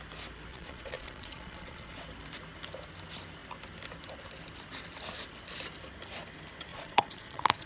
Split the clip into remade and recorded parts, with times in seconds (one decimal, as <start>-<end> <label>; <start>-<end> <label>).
0.0-0.5 recorded; 0.5-2.0 remade; 2.0-6.7 recorded; 6.7-7.7 remade